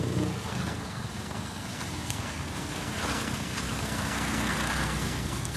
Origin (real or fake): fake